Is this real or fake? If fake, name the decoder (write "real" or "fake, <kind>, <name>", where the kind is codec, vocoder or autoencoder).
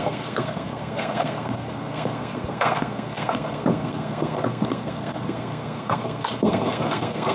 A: fake, codec, SNAC